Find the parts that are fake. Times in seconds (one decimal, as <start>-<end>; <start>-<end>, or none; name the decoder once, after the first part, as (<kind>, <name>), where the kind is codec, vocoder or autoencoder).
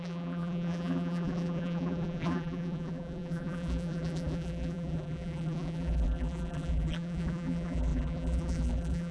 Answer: 0.0-9.1 (vocoder, BigVGAN v2)